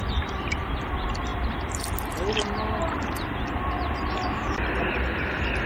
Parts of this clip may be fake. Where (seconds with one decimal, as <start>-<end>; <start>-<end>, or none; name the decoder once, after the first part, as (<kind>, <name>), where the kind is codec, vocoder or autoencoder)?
none